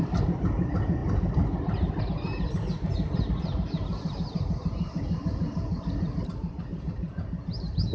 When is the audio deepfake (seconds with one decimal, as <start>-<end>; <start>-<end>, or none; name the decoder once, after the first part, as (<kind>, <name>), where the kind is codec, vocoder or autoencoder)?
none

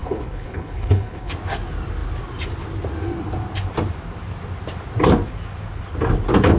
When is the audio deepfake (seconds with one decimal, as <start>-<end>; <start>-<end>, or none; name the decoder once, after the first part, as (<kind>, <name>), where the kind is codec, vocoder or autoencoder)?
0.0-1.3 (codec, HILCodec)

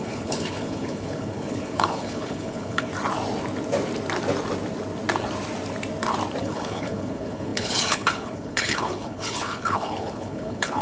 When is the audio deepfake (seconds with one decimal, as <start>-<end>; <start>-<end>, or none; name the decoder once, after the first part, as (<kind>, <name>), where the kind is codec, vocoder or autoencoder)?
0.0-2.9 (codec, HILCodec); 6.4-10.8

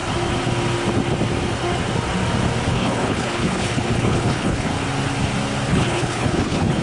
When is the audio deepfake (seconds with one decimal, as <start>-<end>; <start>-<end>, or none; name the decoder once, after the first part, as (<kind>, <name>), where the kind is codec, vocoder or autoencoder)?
2.7-4.7 (codec, HILCodec); 5.7-6.8

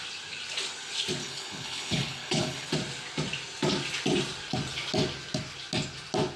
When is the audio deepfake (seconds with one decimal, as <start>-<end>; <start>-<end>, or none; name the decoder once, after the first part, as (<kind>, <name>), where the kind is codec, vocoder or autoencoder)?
1.2-2.7 (codec, HILCodec)